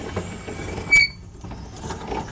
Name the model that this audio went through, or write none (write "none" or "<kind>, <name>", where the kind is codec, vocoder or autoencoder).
none